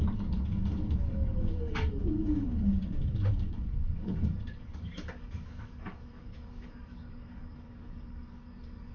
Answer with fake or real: fake